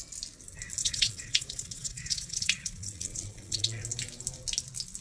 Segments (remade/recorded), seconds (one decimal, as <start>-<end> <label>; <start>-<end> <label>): 0.0-0.8 recorded; 0.8-3.8 remade; 3.8-5.0 recorded